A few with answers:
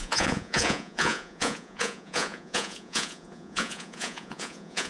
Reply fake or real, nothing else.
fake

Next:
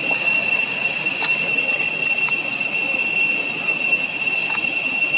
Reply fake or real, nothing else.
real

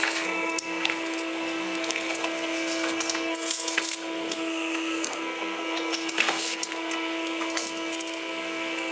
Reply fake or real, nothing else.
fake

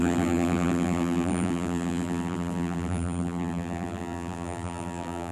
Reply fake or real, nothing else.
fake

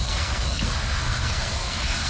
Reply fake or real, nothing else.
fake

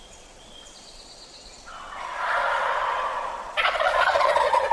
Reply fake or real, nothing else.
fake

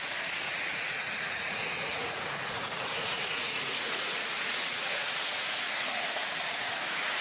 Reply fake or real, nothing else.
fake